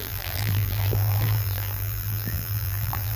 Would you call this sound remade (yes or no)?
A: yes